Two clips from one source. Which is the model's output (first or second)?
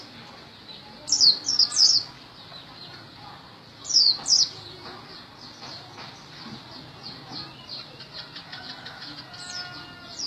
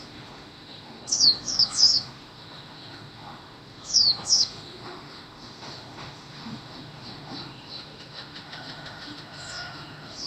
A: second